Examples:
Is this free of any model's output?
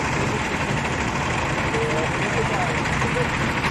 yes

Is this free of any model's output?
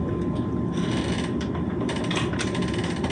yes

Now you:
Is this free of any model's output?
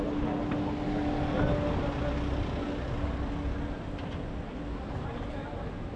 yes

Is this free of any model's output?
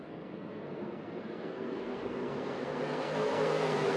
no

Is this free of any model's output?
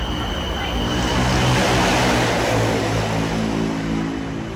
yes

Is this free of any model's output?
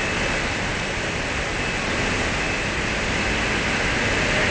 yes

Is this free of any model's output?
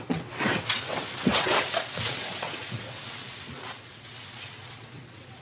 no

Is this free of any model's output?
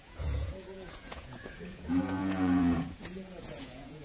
no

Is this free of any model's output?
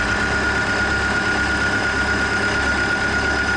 yes